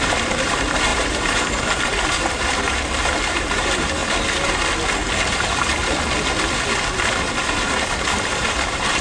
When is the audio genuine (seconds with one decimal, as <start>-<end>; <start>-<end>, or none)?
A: 4.0-7.3